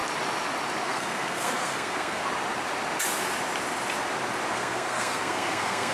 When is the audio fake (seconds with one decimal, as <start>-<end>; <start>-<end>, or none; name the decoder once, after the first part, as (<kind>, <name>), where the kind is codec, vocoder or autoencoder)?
0.8-2.2 (codec, SNAC); 4.5-5.9